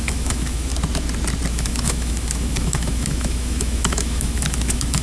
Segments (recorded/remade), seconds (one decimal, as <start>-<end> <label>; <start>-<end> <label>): 0.0-0.7 remade; 0.7-1.5 recorded; 1.5-5.0 remade